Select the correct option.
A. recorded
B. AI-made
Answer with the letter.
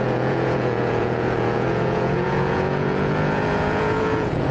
B